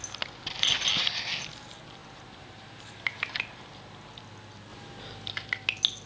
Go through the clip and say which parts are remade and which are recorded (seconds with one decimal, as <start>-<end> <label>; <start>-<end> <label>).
0.0-2.0 recorded; 2.0-3.0 remade; 3.0-6.1 recorded